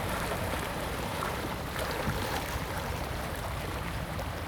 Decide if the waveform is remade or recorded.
remade